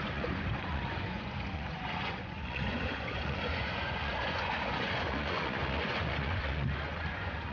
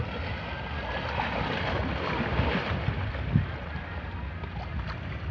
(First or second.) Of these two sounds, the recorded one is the second